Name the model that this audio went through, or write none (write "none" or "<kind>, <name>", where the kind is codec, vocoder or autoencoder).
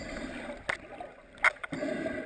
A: none